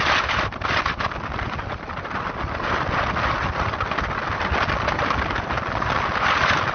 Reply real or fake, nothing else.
real